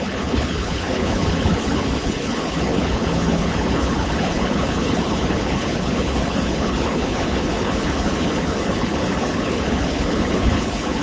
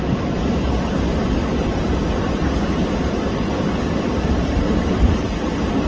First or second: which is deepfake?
first